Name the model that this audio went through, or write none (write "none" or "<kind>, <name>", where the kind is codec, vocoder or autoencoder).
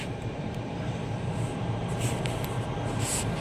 vocoder, BigVGAN v2